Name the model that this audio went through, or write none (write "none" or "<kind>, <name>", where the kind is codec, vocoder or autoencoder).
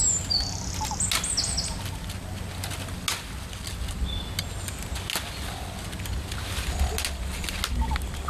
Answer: none